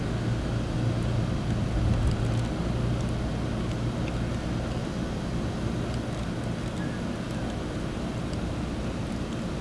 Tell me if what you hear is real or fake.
real